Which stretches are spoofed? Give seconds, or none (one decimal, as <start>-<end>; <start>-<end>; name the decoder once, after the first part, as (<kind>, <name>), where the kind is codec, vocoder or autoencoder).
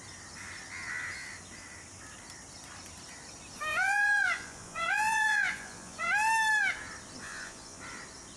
3.7-6.1 (vocoder, Vocos); 7.2-7.8